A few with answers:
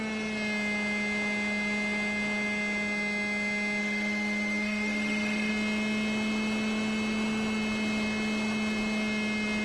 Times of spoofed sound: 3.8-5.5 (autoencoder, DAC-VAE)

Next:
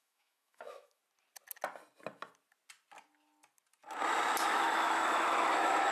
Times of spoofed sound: 0.0-1.0 (autoencoder, DAC-VAE); 4.5-5.9

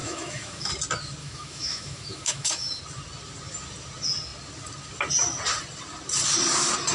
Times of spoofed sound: 0.0-0.7 (autoencoder, DAC-VAE); 1.2-2.8